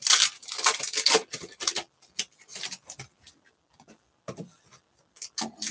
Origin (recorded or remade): recorded